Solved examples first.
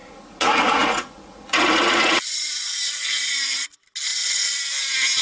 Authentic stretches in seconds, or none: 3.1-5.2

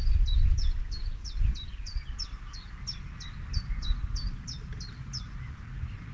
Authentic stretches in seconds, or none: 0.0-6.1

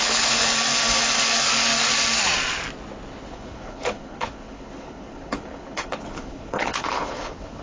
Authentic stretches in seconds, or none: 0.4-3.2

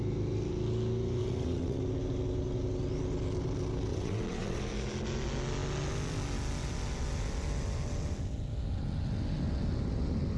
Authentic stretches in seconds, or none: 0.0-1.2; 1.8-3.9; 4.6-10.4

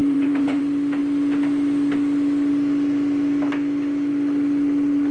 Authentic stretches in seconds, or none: 0.6-5.1